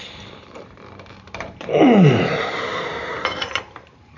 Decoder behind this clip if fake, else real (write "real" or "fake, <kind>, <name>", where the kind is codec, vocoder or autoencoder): fake, vocoder, BigVGAN v2